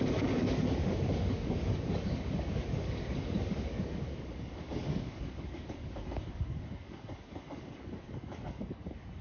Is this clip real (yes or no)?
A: no